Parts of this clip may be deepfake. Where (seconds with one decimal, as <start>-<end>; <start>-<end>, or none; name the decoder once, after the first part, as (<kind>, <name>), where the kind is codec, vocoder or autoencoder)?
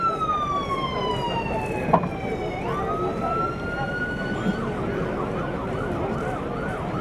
none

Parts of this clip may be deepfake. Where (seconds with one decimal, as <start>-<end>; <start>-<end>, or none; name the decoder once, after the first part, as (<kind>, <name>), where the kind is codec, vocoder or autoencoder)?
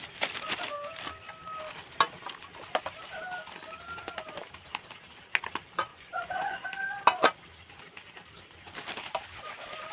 5.9-7.0 (vocoder, Vocos)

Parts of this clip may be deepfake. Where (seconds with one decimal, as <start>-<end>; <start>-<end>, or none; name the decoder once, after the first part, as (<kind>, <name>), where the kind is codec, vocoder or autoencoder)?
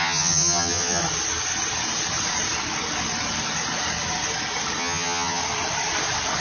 0.0-1.0 (vocoder, HiFi-GAN); 4.8-5.4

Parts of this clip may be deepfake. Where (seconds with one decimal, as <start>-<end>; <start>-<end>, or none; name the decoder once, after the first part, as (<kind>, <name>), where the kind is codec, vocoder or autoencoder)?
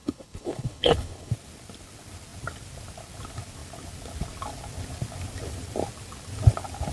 0.0-1.3 (codec, HILCodec)